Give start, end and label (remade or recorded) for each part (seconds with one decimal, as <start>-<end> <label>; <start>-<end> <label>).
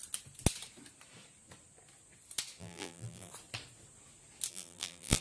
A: 0.0-2.6 recorded; 2.6-3.3 remade; 3.3-4.5 recorded; 4.5-5.2 remade